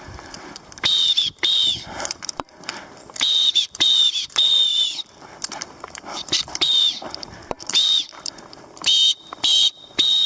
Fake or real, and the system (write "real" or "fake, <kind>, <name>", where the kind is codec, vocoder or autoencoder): fake, vocoder, BigVGAN v2